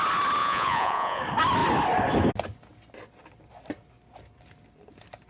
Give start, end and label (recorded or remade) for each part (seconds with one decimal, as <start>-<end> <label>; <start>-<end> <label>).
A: 0.0-0.4 recorded; 0.4-1.2 remade; 1.2-5.3 recorded